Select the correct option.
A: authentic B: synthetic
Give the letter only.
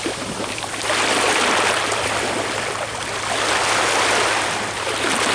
A